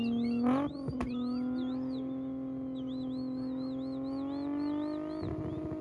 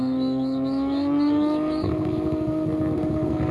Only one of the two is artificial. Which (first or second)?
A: second